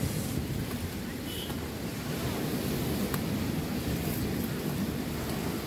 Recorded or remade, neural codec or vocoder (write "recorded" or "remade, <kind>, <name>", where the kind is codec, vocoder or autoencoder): recorded